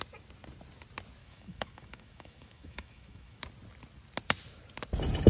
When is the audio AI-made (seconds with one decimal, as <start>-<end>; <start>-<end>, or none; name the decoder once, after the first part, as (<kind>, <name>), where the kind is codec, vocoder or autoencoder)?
1.2-3.4 (autoencoder, DAC-VAE)